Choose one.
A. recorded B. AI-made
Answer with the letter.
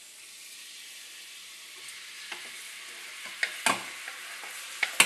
A